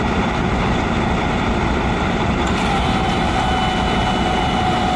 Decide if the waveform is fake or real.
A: real